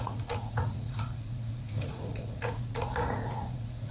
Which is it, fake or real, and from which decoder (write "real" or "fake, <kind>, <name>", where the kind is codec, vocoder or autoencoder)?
fake, vocoder, Vocos